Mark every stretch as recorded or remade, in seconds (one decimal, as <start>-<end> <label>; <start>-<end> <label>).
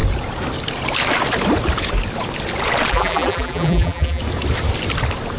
0.0-2.9 recorded; 2.9-4.2 remade; 4.2-5.4 recorded